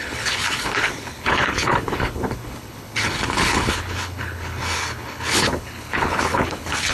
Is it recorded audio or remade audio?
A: remade